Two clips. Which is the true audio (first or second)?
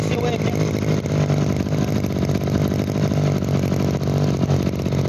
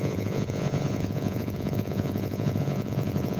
first